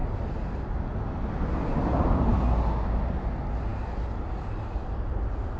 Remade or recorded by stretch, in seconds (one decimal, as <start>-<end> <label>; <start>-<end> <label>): 0.0-5.6 recorded